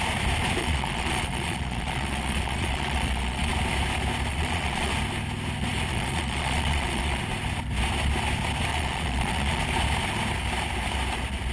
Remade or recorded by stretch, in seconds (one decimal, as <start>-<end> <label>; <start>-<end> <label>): 0.0-0.6 recorded; 0.6-3.5 remade; 3.5-4.3 recorded; 4.3-4.9 remade; 4.9-5.9 recorded; 5.9-7.2 remade; 7.2-8.7 recorded; 8.7-9.6 remade; 9.6-11.5 recorded